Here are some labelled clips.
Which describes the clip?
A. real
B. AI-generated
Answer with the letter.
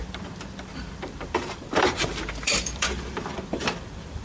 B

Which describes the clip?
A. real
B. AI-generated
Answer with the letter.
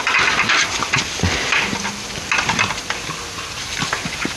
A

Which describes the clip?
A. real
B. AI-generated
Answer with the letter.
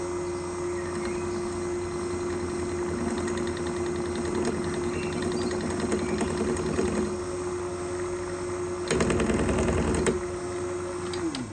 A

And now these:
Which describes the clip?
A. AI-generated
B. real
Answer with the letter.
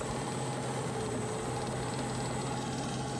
B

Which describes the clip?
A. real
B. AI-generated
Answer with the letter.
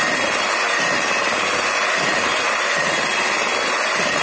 A